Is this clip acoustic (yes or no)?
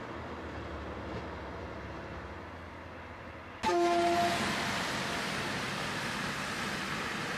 yes